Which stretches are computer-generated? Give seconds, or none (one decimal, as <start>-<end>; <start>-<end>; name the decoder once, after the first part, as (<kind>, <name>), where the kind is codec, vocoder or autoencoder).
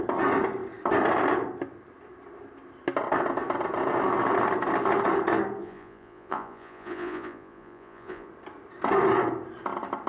5.6-8.3 (vocoder, Vocos)